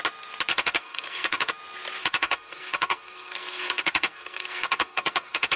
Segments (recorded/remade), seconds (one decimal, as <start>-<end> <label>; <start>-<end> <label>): 0.0-0.5 recorded; 0.5-1.5 remade; 1.5-2.0 recorded; 2.0-5.6 remade